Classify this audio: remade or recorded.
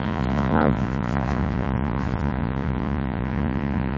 remade